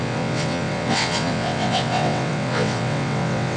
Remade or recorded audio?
remade